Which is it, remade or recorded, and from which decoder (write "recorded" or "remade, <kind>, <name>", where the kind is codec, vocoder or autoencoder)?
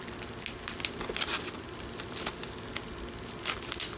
recorded